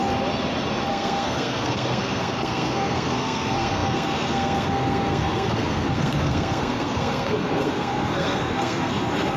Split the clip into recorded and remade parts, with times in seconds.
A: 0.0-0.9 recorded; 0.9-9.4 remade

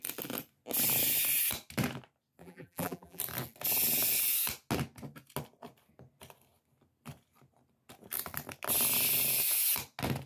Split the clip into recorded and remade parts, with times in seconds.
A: 0.0-2.4 recorded; 2.4-3.2 remade; 3.2-10.3 recorded